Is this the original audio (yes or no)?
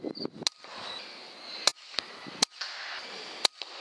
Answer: yes